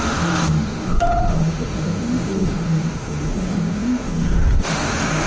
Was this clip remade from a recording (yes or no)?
yes